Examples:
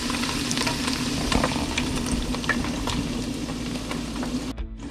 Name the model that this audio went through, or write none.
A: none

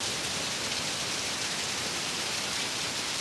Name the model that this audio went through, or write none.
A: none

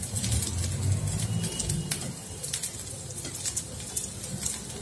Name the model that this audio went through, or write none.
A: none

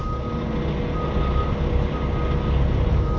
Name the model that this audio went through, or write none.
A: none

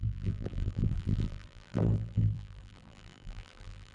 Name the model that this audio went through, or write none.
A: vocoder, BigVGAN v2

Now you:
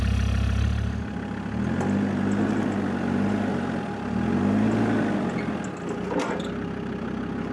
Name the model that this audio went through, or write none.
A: none